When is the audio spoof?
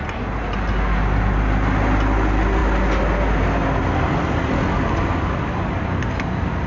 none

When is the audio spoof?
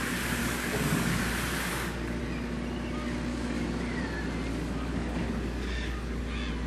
0.4-1.2 (codec, DAC); 1.7-2.2; 3.3-4.0; 4.5-6.2